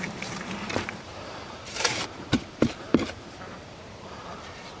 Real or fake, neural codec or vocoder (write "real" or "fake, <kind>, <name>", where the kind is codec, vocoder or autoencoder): fake, vocoder, BigVGAN v2